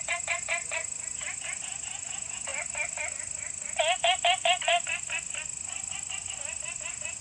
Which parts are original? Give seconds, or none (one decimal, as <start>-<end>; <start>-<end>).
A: 2.5-6.8